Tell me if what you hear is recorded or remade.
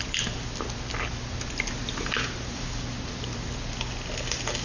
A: recorded